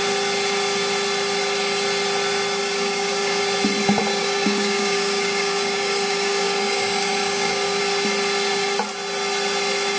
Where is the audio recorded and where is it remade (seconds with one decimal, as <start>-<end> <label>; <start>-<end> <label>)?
0.0-2.6 recorded; 2.6-3.4 remade; 3.4-4.1 recorded; 4.1-7.8 remade; 7.8-10.0 recorded